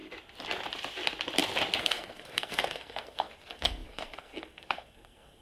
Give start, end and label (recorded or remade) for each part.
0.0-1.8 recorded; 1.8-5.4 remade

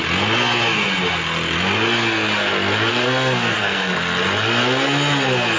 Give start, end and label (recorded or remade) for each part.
0.0-2.9 recorded; 2.9-4.2 remade; 4.2-5.6 recorded

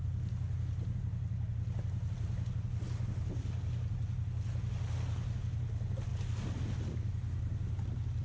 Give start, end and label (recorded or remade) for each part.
0.0-8.2 recorded

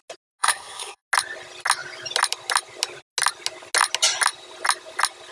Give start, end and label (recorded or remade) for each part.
0.0-0.4 recorded; 0.4-1.0 remade; 1.0-5.3 recorded

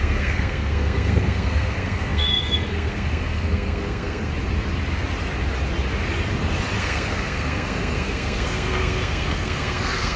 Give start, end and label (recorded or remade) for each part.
0.0-4.3 remade; 4.3-6.8 recorded; 6.8-10.2 remade

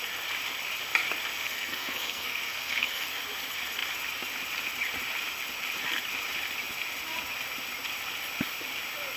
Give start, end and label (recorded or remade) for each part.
0.0-1.3 recorded; 1.3-3.2 remade; 3.2-9.2 recorded

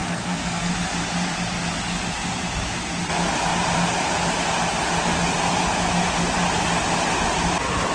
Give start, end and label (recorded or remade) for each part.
0.0-0.7 remade; 0.7-7.9 recorded

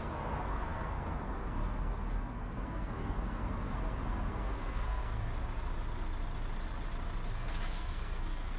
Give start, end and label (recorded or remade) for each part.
0.0-5.3 remade; 5.3-7.3 recorded; 7.3-8.6 remade